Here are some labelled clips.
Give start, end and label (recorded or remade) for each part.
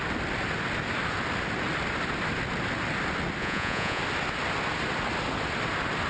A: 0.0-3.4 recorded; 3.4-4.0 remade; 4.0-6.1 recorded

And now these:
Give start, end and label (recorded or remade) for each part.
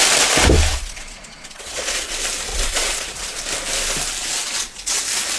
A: 0.0-0.7 recorded; 0.7-2.1 remade; 2.1-2.5 recorded; 2.5-3.4 remade; 3.4-4.2 recorded; 4.2-5.0 remade; 5.0-5.4 recorded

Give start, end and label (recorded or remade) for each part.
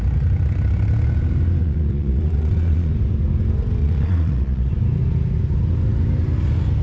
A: 0.0-1.6 recorded; 1.6-2.9 remade; 2.9-3.8 recorded; 3.8-4.7 remade; 4.7-6.8 recorded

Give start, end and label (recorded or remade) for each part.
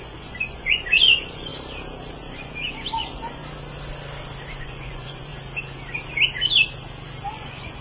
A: 0.0-1.5 remade; 1.5-2.1 recorded; 2.1-3.4 remade; 3.4-4.6 recorded; 4.6-5.3 remade; 5.3-7.3 recorded; 7.3-7.8 remade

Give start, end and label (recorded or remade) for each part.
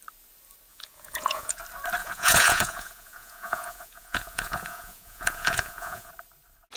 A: 0.0-0.7 recorded; 0.7-1.6 remade; 1.6-2.0 recorded; 2.0-6.1 remade; 6.1-6.8 recorded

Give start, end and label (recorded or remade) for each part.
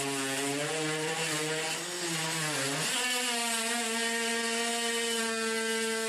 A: 0.0-6.1 recorded